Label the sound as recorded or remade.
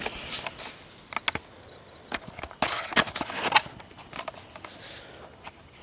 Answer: recorded